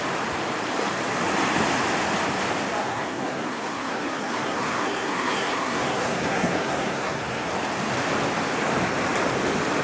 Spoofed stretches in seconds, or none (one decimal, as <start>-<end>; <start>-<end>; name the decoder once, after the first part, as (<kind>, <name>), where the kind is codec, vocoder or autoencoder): 2.8-7.5 (codec, SNAC)